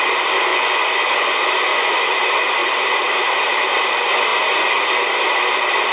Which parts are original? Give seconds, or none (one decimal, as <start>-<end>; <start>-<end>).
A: 0.0-0.5; 1.1-1.7; 2.2-5.9